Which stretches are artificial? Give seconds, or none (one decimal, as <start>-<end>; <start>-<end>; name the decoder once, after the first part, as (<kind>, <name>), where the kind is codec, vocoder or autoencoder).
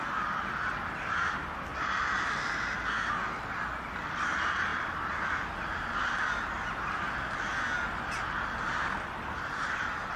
0.0-1.7 (vocoder, BigVGAN v2); 3.8-7.5; 8.1-10.2